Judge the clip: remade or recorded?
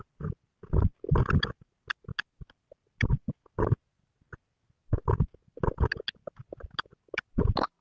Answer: recorded